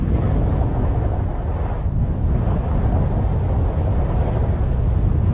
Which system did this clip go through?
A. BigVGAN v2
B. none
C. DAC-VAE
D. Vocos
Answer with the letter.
B